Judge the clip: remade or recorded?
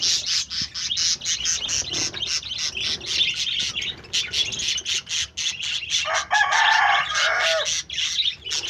recorded